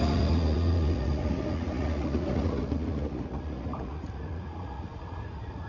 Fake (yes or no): yes